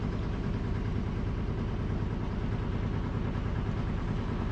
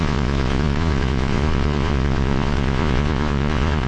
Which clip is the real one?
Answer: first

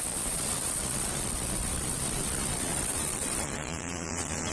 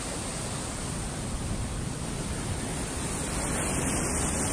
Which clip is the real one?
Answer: second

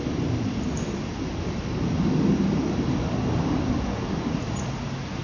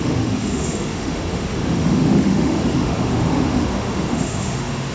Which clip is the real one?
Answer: first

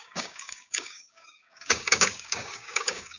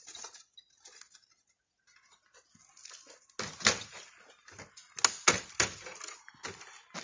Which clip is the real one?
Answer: second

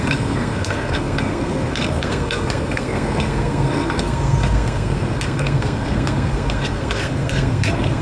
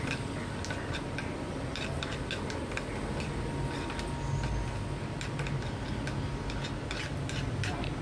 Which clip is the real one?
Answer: second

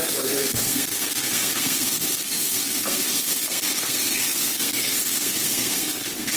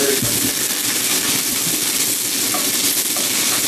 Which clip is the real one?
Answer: second